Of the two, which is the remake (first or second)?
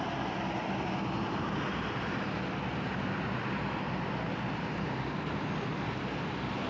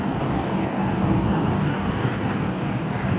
second